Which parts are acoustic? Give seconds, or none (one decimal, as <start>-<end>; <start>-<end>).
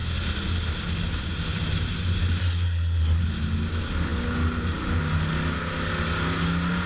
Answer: 0.0-2.4; 3.2-6.9